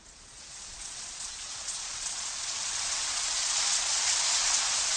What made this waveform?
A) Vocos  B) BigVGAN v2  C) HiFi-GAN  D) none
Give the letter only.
A